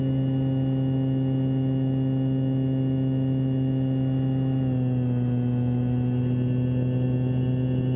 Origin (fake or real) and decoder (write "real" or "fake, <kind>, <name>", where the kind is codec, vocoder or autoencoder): real